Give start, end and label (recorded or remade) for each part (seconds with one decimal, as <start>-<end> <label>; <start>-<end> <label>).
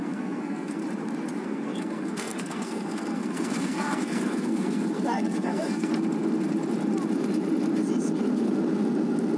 0.0-0.8 remade; 0.8-1.4 recorded; 1.4-5.9 remade; 5.9-9.4 recorded